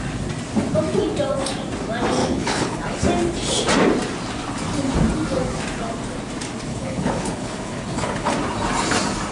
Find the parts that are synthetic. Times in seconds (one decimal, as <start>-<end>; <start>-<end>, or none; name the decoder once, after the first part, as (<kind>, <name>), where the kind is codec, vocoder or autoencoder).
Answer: 2.2-2.8 (codec, HILCodec); 6.7-8.3